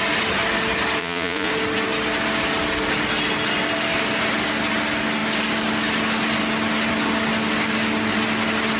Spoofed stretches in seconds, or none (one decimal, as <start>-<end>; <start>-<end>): 1.0-1.5